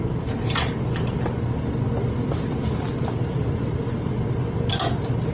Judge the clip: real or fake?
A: real